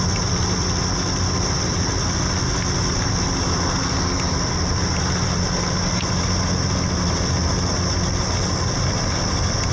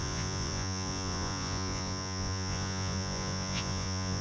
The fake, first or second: second